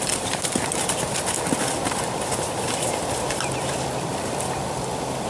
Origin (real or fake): fake